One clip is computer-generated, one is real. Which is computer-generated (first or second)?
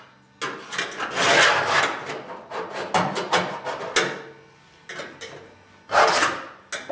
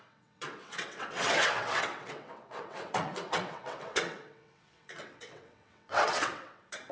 second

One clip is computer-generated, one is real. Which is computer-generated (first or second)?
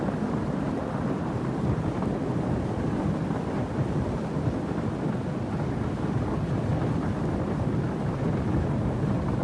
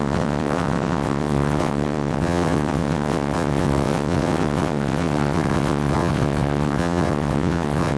second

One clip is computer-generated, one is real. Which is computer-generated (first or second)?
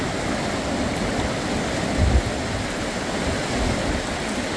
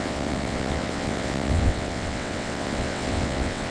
second